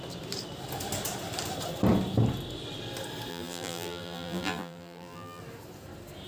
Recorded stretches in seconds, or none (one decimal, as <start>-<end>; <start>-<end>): 0.0-3.3; 5.4-6.3